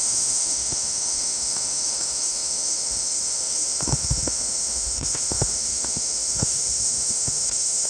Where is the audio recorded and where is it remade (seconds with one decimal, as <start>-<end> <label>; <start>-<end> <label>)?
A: 0.0-7.9 remade